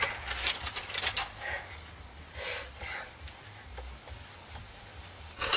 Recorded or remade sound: recorded